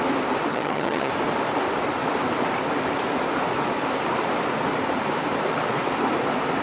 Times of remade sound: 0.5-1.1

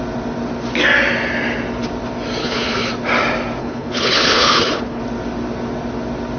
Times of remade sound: 2.4-2.9; 3.6-5.0